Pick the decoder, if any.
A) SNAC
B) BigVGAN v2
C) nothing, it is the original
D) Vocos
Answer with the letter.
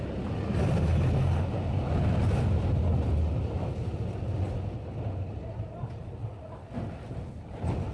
C